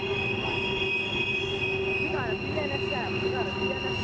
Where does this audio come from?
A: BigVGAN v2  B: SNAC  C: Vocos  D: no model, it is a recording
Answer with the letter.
D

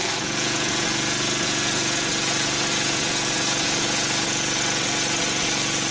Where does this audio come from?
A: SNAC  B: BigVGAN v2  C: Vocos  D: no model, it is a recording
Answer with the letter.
C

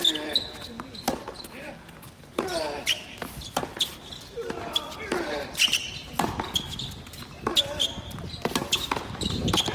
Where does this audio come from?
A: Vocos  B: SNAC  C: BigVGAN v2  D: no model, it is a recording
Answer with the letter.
D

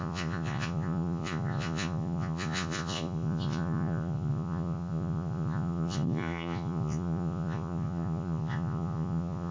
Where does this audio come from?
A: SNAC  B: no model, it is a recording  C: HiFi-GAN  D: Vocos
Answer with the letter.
D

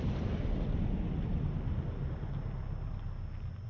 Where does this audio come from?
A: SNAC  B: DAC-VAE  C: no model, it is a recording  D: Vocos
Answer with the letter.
C